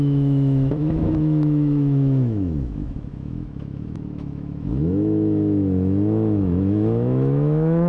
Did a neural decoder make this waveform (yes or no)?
yes